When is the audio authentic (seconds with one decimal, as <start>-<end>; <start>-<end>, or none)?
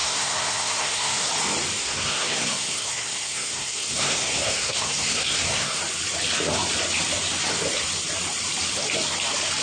1.3-1.8; 5.8-9.6